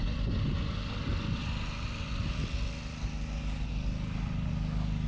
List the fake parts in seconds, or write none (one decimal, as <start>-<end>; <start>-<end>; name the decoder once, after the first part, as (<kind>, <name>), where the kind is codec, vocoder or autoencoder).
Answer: none